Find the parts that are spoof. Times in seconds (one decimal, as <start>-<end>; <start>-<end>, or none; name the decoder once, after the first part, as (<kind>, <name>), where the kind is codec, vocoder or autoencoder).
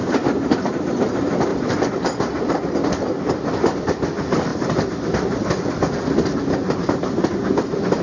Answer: 0.0-1.0 (vocoder, BigVGAN v2); 1.5-2.5